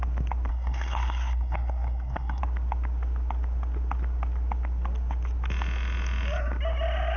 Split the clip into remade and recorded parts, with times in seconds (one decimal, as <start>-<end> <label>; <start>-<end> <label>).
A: 0.0-0.5 recorded; 0.5-2.4 remade; 2.4-7.2 recorded